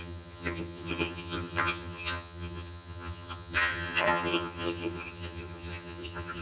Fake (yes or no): yes